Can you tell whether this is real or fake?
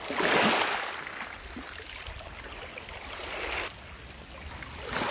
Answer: real